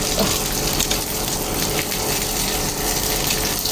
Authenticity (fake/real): real